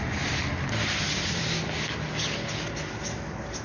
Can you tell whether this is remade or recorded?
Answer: recorded